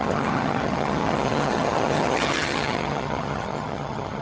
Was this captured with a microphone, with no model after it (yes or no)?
no